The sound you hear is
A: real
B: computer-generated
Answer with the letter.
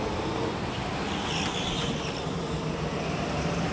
A